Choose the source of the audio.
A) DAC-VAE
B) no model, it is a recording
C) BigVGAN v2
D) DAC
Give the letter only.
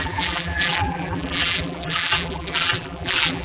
C